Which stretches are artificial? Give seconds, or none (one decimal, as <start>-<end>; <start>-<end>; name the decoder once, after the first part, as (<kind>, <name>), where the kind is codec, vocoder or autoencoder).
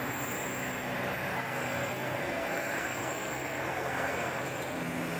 1.3-4.4 (codec, SNAC)